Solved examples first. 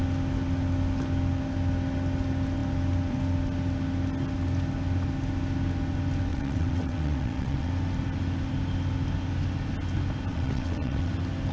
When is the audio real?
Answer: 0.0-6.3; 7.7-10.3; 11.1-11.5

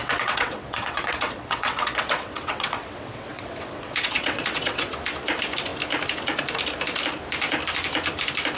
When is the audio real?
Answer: 4.9-8.6

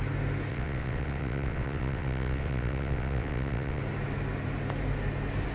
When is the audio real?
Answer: 0.0-0.5; 3.8-5.5

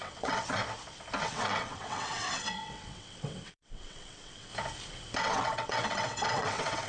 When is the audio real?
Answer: 0.6-1.2; 4.5-5.2

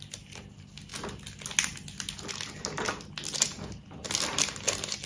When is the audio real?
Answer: 0.0-5.1

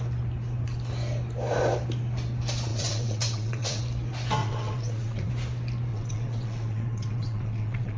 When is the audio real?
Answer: 0.0-2.7; 3.8-4.4; 5.3-5.9